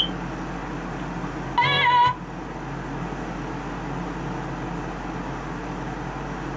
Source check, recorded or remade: recorded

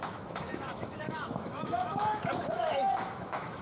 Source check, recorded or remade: remade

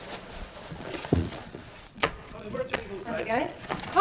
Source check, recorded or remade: remade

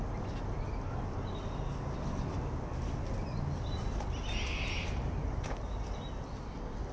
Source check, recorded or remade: recorded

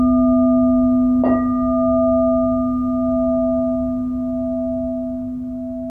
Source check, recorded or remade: recorded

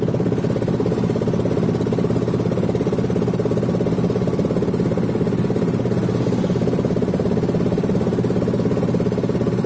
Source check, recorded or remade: recorded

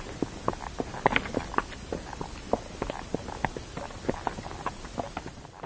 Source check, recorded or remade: recorded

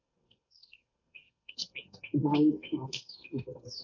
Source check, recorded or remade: remade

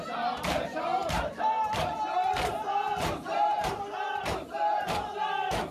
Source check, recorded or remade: remade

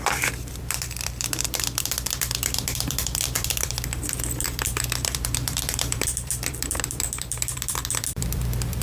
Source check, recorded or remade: remade